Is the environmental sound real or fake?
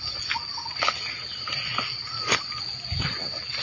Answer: real